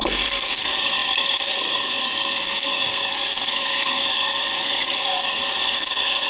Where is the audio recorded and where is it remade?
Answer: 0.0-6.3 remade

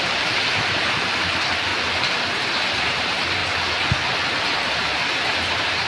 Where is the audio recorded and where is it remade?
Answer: 0.0-1.7 remade; 1.7-2.2 recorded; 2.2-3.4 remade; 3.4-4.3 recorded; 4.3-5.9 remade

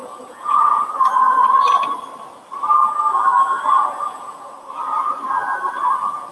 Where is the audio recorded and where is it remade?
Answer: 0.0-0.8 remade; 0.8-3.8 recorded; 3.8-5.3 remade; 5.3-6.3 recorded

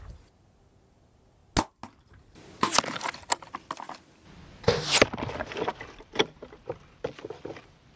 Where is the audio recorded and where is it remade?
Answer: 0.0-8.0 recorded

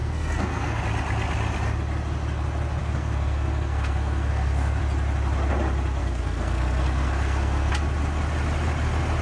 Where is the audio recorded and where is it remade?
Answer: 0.0-0.8 remade; 0.8-2.8 recorded; 2.8-4.8 remade; 4.8-6.0 recorded; 6.0-7.7 remade; 7.7-9.2 recorded